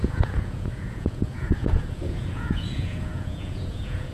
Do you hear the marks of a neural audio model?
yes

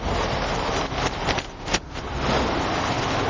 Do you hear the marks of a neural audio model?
no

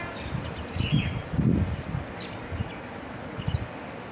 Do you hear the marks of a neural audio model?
no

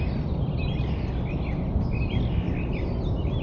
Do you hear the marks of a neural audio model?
no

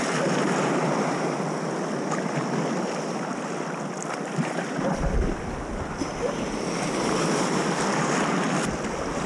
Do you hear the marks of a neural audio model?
no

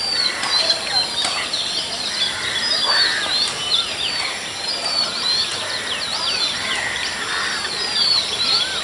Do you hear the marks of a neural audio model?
yes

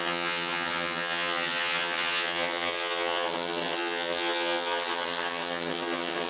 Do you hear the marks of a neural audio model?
yes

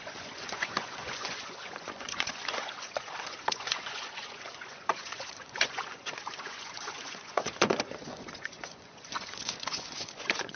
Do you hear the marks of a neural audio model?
yes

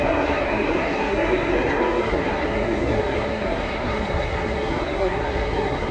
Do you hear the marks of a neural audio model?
yes